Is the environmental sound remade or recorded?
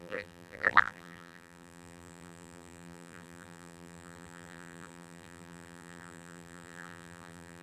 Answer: remade